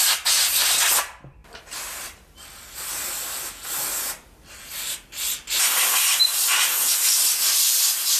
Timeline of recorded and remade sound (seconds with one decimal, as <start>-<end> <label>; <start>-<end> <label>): 0.0-8.2 recorded